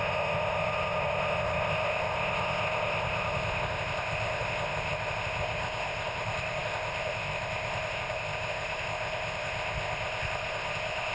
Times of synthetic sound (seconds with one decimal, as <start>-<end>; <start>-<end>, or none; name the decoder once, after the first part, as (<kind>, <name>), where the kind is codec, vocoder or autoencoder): 0.0-11.1 (codec, ZipCodec)